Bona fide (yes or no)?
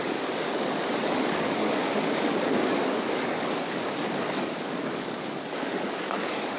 no